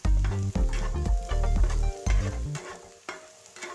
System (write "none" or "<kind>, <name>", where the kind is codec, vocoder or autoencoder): none